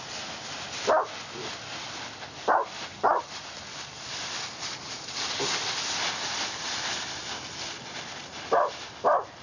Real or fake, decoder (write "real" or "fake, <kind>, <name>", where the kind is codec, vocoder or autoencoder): real